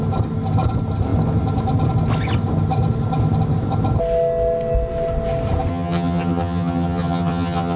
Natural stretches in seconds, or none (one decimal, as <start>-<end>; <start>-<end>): 0.0-5.7